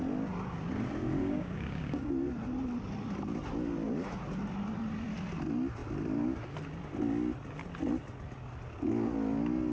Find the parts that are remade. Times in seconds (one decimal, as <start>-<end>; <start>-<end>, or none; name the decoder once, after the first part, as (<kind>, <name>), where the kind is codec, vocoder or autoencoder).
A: 1.2-2.1 (codec, DAC)